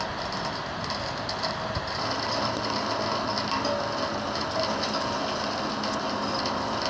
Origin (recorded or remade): recorded